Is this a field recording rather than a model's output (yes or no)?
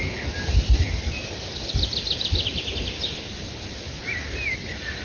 yes